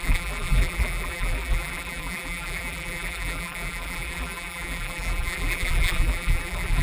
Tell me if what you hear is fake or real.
fake